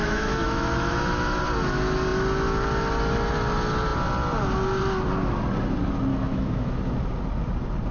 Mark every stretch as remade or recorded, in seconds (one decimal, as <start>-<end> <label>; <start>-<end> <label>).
0.0-1.4 remade; 1.4-6.1 recorded; 6.1-6.8 remade; 6.8-7.9 recorded

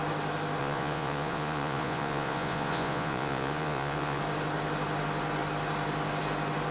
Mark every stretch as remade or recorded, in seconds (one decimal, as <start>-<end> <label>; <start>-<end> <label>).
0.0-0.6 recorded; 0.6-4.2 remade; 4.2-6.7 recorded

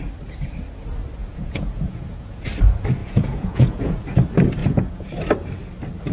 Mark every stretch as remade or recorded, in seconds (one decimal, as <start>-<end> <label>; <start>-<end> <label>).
0.0-1.2 recorded; 1.2-2.3 remade; 2.3-3.0 recorded; 3.0-3.9 remade; 3.9-4.6 recorded; 4.6-5.1 remade; 5.1-6.1 recorded

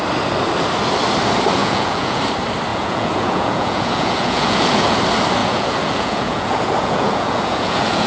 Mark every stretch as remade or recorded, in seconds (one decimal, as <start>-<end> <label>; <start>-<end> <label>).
0.0-1.6 recorded; 1.6-2.2 remade; 2.2-2.7 recorded; 2.7-5.0 remade; 5.0-5.4 recorded; 5.4-8.1 remade

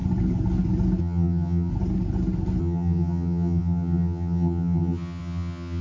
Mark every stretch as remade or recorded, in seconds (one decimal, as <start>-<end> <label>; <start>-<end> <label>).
0.0-1.0 recorded; 1.0-1.7 remade; 1.7-2.6 recorded; 2.6-5.8 remade

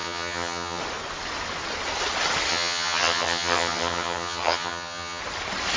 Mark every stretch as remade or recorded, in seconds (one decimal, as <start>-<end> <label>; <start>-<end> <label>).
0.0-0.8 remade; 0.8-2.5 recorded; 2.5-5.2 remade; 5.2-5.8 recorded

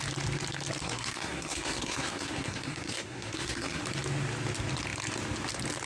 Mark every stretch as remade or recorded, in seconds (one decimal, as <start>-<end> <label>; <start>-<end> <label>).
0.0-0.8 recorded; 0.8-3.8 remade; 3.8-5.9 recorded